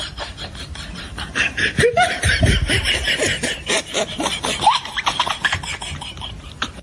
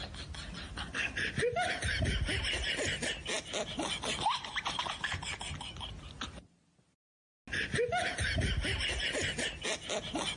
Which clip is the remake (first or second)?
first